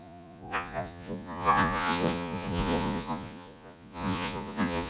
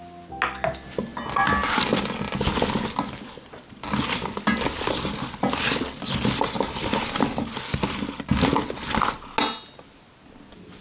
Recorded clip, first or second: second